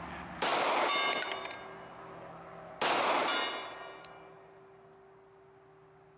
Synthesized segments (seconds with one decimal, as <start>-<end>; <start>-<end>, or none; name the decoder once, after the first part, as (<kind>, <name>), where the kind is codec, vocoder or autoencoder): none

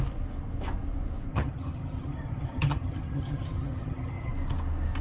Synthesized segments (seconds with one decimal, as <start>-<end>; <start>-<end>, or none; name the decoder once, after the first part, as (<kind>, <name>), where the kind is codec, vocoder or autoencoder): 1.3-4.3 (vocoder, HiFi-GAN)